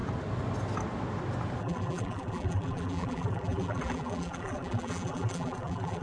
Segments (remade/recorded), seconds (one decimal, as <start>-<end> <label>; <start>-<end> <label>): 0.0-1.6 recorded; 1.6-6.0 remade